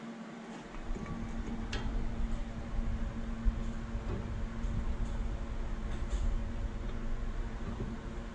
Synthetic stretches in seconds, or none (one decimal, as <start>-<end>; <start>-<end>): 6.4-7.4